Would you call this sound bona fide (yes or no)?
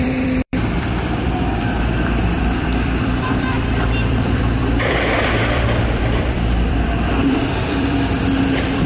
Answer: no